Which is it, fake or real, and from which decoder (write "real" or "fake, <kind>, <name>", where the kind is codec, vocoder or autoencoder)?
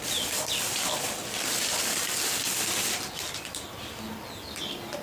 fake, vocoder, BigVGAN v2